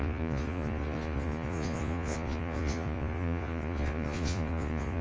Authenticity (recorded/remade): remade